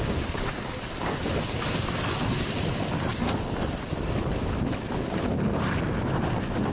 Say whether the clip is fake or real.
fake